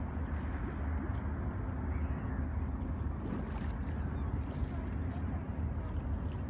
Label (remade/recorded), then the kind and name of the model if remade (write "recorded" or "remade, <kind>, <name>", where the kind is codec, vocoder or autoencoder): recorded